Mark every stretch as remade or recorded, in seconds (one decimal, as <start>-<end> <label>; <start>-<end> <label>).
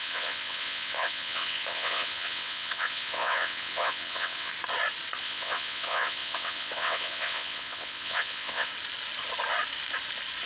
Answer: 0.0-4.5 remade; 4.5-5.2 recorded; 5.2-8.7 remade; 8.7-10.5 recorded